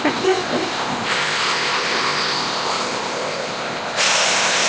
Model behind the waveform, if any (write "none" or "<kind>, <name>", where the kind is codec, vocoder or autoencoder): codec, ZipCodec